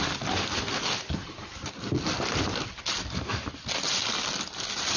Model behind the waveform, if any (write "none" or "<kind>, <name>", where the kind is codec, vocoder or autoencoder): none